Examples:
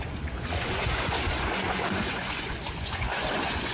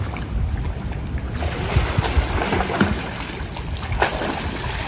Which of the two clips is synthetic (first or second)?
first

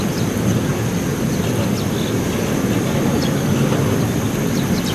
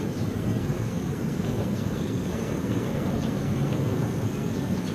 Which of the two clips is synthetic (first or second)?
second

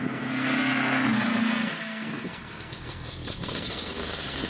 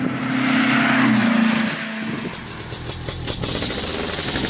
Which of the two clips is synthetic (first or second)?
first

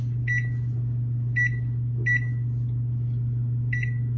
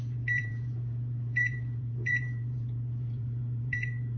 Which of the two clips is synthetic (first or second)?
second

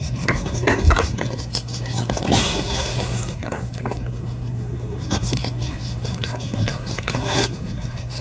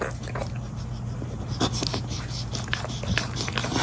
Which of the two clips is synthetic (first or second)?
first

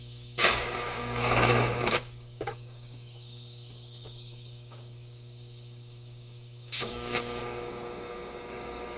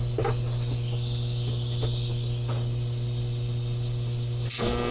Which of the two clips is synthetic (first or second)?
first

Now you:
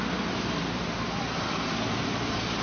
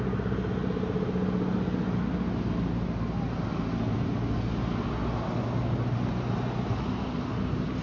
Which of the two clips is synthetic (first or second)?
first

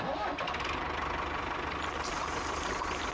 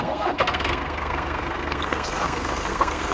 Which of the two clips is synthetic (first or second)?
second